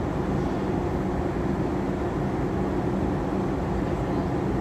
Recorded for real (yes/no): yes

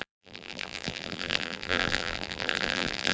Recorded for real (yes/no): no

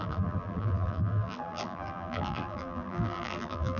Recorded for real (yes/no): no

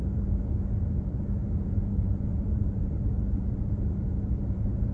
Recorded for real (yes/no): no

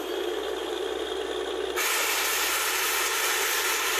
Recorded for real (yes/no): yes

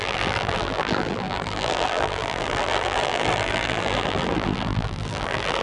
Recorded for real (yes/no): no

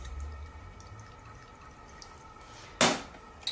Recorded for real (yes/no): yes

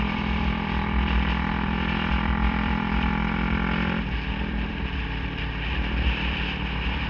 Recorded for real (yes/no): no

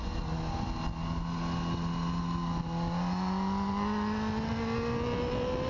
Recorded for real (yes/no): yes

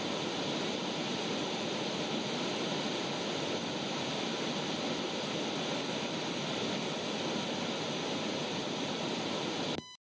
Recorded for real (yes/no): no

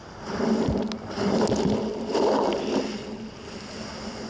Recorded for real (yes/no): yes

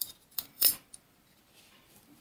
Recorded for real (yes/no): no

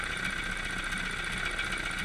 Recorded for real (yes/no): yes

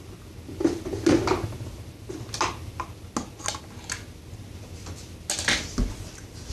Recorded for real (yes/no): yes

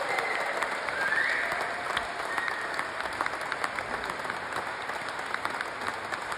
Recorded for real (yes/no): yes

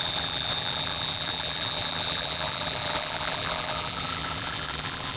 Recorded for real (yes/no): no